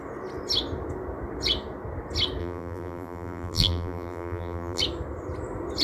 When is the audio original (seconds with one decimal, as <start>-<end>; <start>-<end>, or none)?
0.0-2.4; 4.8-5.8